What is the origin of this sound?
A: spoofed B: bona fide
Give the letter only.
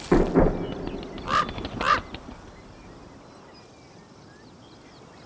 B